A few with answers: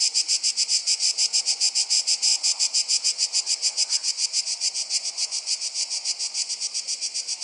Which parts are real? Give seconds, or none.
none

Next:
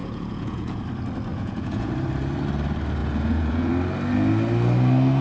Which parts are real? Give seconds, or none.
0.8-1.3; 1.9-3.0; 3.7-5.2

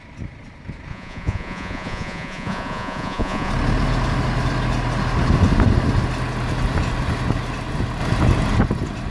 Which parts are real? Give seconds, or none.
0.0-0.9; 3.5-9.1

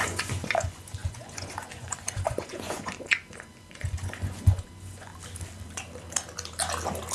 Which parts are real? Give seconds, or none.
5.1-7.1

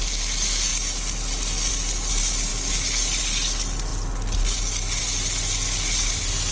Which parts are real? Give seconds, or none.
0.0-6.5